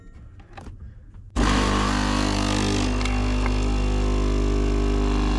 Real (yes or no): yes